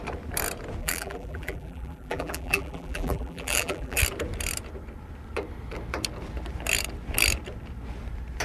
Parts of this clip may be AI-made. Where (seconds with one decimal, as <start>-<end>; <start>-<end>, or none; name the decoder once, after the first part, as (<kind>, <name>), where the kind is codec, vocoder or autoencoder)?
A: 0.8-4.0 (vocoder, BigVGAN v2)